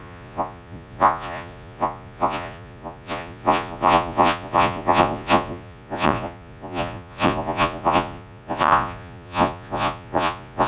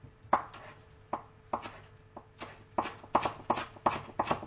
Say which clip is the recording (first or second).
second